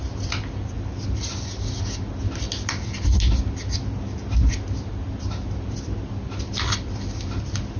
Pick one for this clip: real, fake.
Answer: real